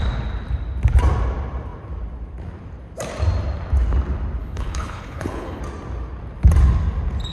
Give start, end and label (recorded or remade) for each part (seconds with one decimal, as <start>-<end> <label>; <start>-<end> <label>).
0.0-4.4 recorded; 4.4-5.6 remade; 5.6-7.3 recorded